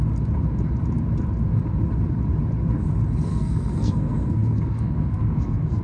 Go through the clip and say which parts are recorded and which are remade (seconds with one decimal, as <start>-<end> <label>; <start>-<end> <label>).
0.0-3.3 recorded; 3.3-5.8 remade